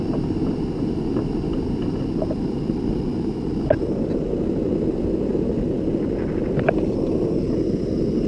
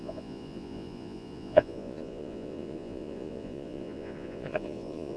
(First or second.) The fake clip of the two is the second